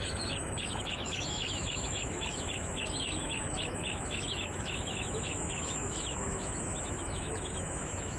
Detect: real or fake fake